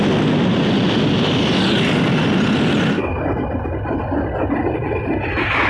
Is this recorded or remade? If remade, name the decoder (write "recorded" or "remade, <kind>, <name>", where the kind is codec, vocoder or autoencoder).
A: recorded